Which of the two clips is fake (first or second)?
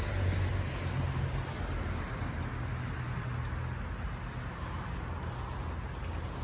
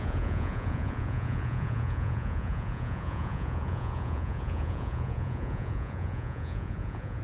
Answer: second